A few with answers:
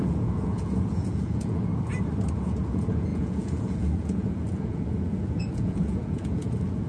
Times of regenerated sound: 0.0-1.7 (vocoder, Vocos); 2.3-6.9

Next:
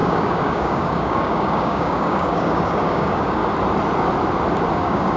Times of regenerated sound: 0.0-3.4 (codec, DAC); 4.7-5.2

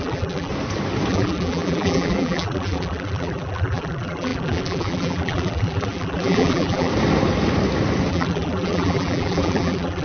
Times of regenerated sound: 0.0-0.5 (vocoder, BigVGAN v2); 1.1-6.9; 8.1-10.0

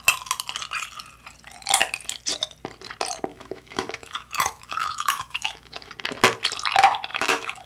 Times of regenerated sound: 3.3-5.9 (autoencoder, DAC-VAE); 7.1-7.7

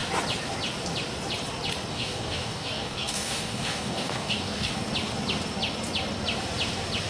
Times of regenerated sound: 1.9-4.7 (codec, DAC)

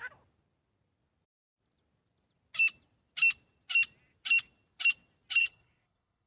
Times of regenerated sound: 5.4-6.3 (codec, HILCodec)

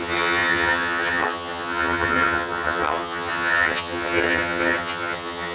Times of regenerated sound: 0.0-5.5 (vocoder, HiFi-GAN)

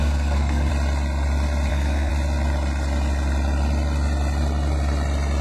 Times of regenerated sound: 0.0-0.7 (codec, SNAC); 1.7-2.1